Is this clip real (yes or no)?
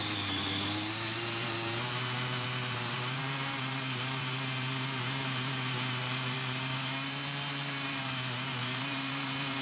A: no